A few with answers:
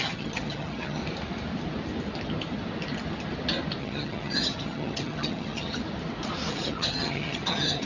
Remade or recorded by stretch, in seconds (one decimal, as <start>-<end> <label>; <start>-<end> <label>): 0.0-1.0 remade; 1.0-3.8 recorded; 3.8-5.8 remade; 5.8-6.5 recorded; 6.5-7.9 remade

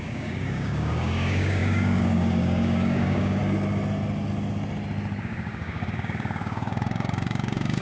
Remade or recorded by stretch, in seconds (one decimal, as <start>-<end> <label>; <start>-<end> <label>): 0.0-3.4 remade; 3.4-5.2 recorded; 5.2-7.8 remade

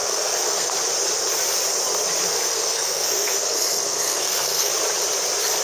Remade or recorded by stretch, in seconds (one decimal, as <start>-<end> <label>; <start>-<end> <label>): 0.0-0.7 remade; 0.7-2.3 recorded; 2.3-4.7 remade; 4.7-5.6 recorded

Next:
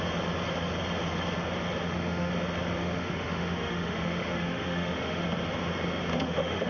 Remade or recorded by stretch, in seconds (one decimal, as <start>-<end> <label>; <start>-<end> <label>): 0.0-1.8 recorded; 1.8-2.3 remade; 2.3-2.8 recorded; 2.8-5.2 remade; 5.2-6.1 recorded; 6.1-6.7 remade